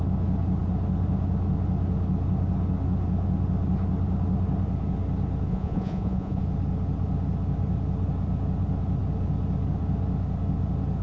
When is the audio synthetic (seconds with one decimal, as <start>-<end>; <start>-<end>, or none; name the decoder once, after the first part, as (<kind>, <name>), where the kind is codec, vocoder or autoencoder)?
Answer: 5.5-6.4 (vocoder, Vocos)